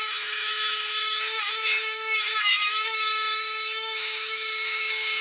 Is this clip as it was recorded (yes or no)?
no